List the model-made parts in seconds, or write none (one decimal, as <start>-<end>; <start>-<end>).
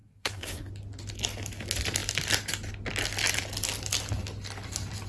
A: 0.0-0.7